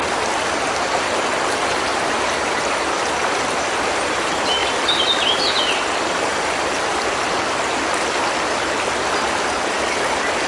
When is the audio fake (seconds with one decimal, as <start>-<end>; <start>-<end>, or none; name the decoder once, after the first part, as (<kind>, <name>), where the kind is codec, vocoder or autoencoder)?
1.9-2.6 (vocoder, BigVGAN v2); 6.3-7.0